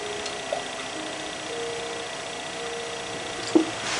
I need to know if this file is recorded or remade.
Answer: recorded